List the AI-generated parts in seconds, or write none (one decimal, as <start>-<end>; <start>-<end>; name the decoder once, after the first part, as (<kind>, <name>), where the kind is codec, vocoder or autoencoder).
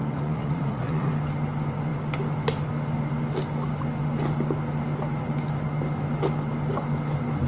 0.0-1.1 (vocoder, Vocos)